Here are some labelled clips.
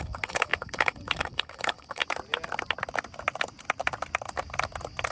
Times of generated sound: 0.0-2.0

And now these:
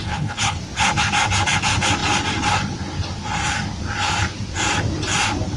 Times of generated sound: 0.0-0.6

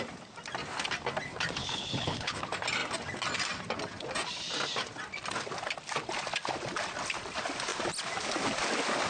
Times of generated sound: 1.6-2.4

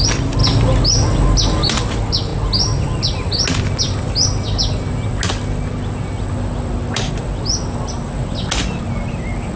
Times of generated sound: none

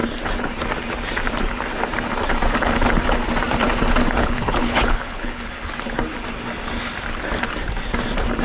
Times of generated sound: 4.2-5.5

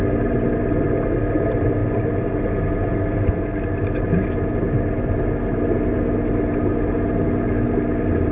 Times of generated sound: none

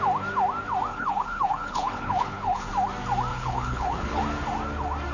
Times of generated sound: 0.9-2.7; 3.3-4.2